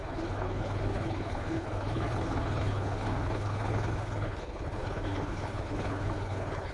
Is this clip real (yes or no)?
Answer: no